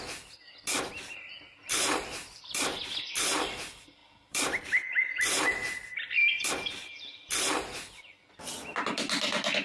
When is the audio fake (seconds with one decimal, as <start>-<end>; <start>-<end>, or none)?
1.6-2.8; 4.0-6.5